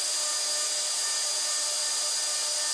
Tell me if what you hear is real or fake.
real